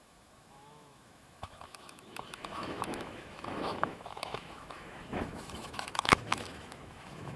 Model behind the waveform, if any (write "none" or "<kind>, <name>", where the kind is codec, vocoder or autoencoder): autoencoder, DAC-VAE